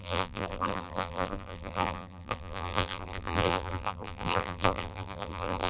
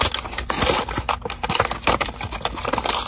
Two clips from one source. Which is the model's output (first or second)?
first